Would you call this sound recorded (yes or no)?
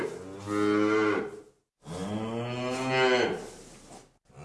yes